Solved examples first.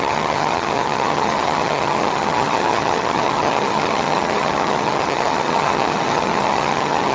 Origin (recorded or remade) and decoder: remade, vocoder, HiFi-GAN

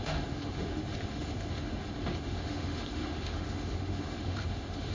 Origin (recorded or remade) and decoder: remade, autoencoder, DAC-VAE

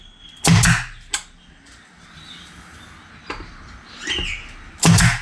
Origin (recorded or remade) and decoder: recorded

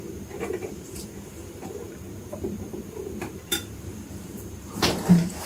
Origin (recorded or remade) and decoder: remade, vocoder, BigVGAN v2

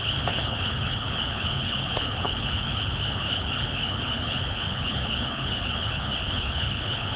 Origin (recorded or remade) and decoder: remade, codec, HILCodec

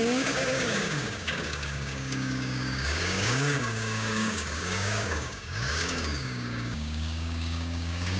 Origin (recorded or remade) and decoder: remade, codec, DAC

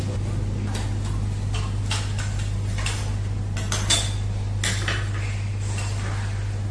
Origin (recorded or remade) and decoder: recorded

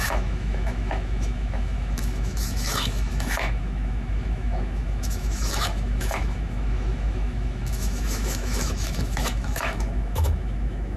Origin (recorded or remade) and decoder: remade, autoencoder, DAC-VAE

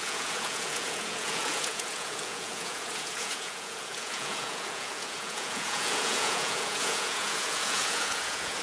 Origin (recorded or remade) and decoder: remade, vocoder, Vocos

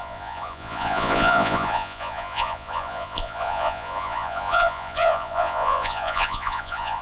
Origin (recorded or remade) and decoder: remade, vocoder, Vocos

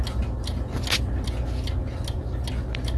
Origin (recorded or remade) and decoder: recorded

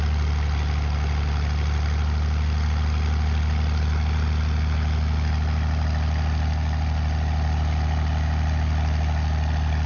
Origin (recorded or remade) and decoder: recorded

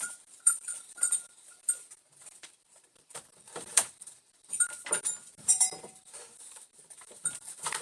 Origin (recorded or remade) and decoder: remade, vocoder, BigVGAN v2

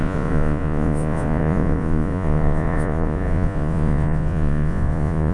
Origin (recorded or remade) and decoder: remade, vocoder, Vocos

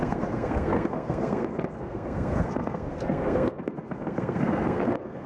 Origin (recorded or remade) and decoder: remade, codec, SNAC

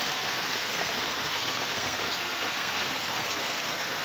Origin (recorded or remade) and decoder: remade, codec, SNAC